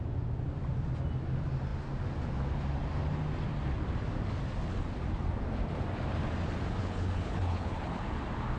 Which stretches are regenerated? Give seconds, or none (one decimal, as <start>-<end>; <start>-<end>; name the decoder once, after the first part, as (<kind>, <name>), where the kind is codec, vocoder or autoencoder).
6.8-8.0 (codec, HILCodec)